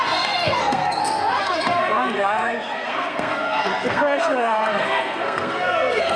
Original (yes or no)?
no